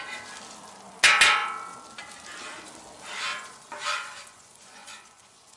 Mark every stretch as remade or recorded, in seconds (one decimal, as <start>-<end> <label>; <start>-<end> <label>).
0.0-3.3 recorded; 3.3-5.6 remade